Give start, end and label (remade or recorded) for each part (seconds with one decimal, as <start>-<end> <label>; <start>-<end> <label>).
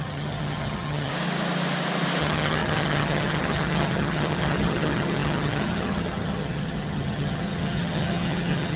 0.0-1.1 remade; 1.1-2.2 recorded; 2.2-8.8 remade